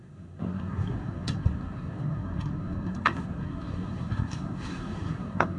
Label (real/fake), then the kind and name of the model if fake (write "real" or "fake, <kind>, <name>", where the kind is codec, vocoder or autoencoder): fake, codec, SNAC